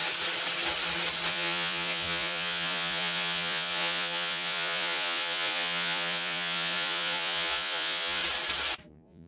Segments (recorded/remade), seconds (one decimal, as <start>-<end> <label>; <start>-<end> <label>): 0.0-1.3 recorded; 1.3-8.2 remade; 8.2-8.9 recorded; 8.9-9.3 remade

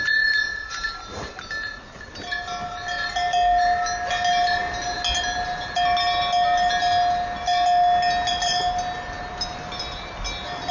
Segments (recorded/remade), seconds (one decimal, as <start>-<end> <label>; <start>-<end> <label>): 0.0-10.7 recorded

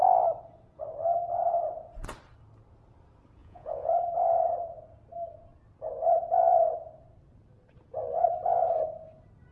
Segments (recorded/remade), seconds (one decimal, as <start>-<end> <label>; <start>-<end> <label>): 0.0-3.4 recorded; 3.4-3.9 remade; 3.9-9.5 recorded

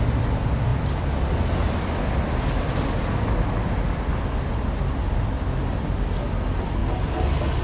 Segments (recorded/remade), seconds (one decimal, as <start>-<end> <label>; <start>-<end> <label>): 0.0-7.6 recorded

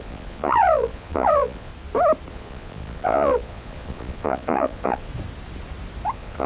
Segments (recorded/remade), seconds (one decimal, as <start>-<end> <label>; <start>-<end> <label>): 0.0-1.7 remade; 1.7-2.3 recorded; 2.3-5.1 remade; 5.1-6.1 recorded; 6.1-6.5 remade

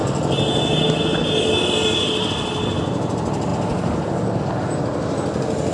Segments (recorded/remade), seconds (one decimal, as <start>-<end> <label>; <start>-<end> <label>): 0.0-5.7 recorded

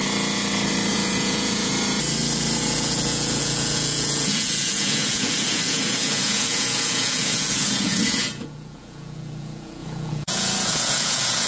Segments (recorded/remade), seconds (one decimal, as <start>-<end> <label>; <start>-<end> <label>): 0.0-0.9 recorded; 0.9-1.7 remade; 1.7-2.6 recorded; 2.6-11.5 remade

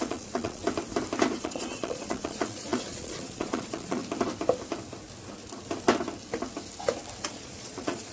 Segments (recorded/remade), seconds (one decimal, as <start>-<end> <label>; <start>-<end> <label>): 0.0-0.6 remade; 0.6-1.4 recorded; 1.4-4.0 remade; 4.0-7.3 recorded; 7.3-8.1 remade